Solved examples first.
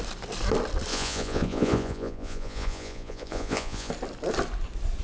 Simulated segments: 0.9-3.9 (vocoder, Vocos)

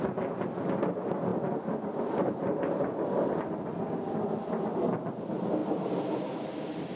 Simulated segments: none